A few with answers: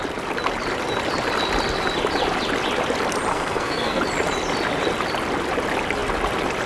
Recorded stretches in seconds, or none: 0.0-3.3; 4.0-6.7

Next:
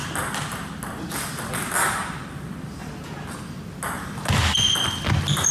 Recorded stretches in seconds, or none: 0.0-5.5

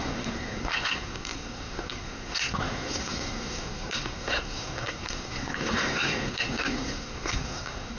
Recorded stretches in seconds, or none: none

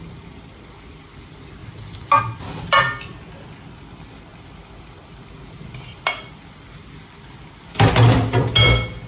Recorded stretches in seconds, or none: 0.0-9.1